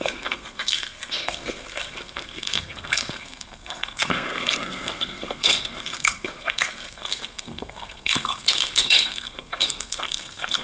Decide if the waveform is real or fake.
fake